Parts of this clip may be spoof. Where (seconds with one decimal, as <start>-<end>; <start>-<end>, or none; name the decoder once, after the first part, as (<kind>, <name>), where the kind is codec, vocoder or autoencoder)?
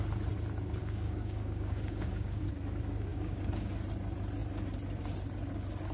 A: 0.8-2.5 (codec, DAC); 3.1-3.7